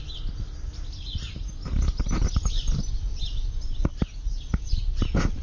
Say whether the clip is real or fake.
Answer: real